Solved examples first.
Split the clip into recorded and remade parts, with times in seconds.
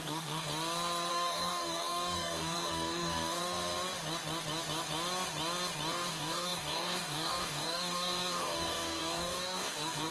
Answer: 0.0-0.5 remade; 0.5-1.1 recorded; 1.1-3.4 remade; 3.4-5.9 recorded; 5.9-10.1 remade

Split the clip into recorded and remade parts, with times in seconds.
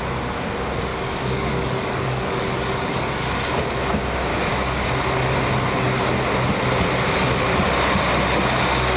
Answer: 0.0-0.9 recorded; 0.9-3.5 remade; 3.5-4.3 recorded; 4.3-4.9 remade; 4.9-9.0 recorded